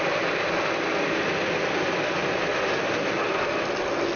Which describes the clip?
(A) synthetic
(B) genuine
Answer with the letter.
B